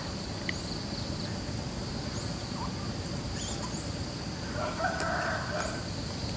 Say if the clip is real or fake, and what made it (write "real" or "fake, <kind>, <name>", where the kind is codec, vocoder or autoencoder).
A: real